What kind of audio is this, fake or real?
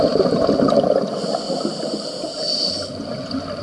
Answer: real